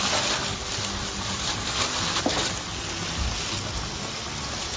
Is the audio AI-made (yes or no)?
no